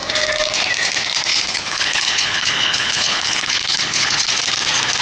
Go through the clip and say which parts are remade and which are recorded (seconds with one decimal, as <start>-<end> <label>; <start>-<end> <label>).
0.0-1.3 recorded; 1.3-4.3 remade; 4.3-5.0 recorded